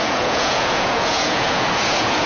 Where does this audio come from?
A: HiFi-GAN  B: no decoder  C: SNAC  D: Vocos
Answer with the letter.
D